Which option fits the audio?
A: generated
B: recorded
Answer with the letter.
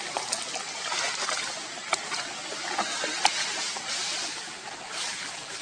B